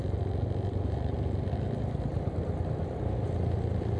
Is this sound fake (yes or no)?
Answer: no